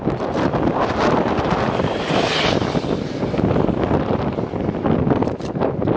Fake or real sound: real